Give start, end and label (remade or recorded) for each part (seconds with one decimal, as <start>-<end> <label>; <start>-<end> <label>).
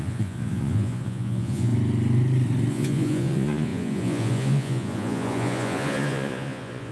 0.0-1.7 remade; 1.7-2.7 recorded; 2.7-6.9 remade